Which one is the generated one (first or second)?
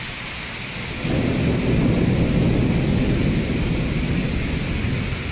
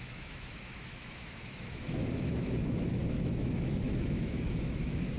second